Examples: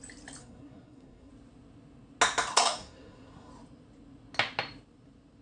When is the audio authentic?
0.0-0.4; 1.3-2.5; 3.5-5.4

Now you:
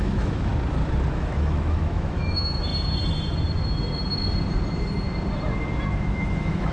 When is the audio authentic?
0.5-1.1; 2.7-6.0

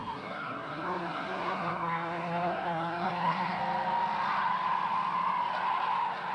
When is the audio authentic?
3.6-6.3

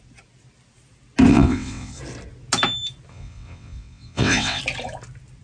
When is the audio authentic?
0.0-1.3; 2.0-3.1; 4.6-5.4

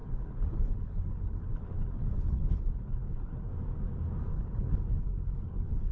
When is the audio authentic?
3.5-4.3

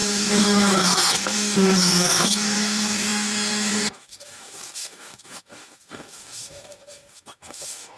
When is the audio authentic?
none

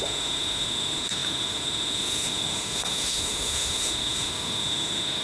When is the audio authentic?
none